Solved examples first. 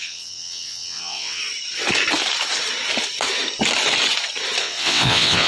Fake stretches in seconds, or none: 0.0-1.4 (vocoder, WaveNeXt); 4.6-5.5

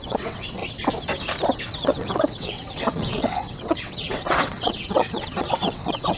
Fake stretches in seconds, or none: 0.0-0.6 (vocoder, WaveNeXt); 1.6-6.2